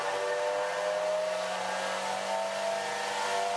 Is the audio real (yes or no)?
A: yes